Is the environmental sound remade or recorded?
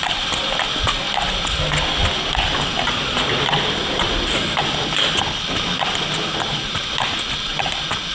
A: recorded